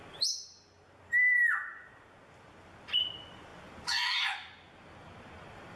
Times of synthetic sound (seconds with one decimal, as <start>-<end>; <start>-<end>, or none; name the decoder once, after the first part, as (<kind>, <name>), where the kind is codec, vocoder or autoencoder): none